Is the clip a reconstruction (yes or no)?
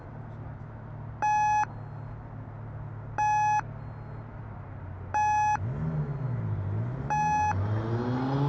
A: no